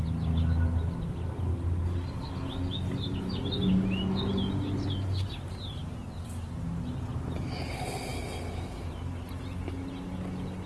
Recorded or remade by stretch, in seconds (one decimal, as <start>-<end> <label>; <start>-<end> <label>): 0.0-10.7 recorded